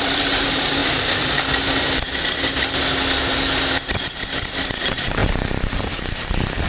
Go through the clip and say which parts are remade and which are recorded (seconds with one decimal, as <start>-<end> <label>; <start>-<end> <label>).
0.0-0.8 remade; 0.8-4.8 recorded; 4.8-6.7 remade